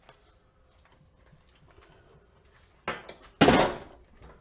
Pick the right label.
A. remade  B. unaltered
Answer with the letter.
B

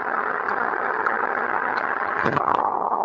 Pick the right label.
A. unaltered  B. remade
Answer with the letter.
B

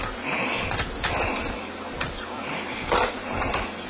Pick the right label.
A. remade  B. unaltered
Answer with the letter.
B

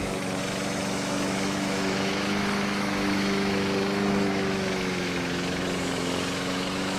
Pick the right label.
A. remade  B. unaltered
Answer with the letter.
A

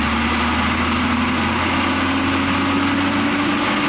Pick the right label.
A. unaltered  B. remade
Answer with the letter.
A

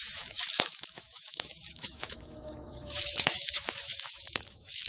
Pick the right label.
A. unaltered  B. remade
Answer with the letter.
B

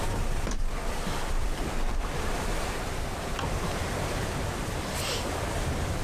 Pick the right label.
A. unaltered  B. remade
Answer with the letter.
B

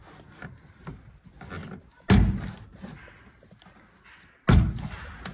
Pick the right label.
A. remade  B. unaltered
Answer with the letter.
B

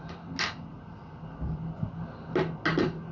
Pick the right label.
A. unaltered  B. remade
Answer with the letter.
A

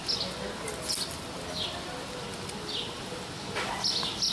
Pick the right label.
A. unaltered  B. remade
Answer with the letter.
A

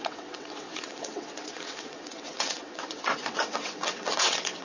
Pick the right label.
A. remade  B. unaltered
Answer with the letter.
A